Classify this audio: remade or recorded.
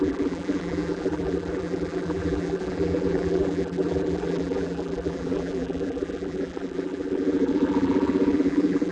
remade